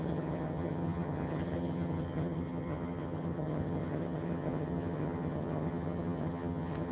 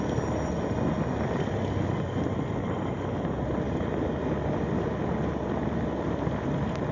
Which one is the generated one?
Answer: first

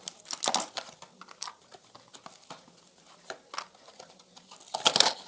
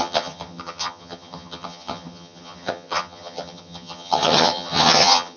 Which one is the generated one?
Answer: second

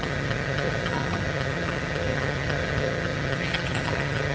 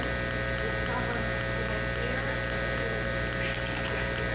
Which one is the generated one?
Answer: first